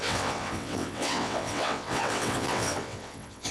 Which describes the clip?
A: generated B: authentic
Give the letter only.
A